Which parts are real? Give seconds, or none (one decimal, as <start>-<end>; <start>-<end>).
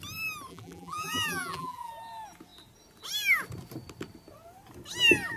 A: 0.0-0.5; 1.9-5.4